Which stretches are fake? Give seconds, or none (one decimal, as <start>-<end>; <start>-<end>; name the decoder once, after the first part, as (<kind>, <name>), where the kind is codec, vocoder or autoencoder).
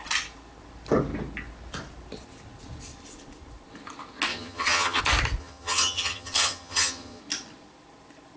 4.3-5.0 (vocoder, HiFi-GAN); 5.4-7.2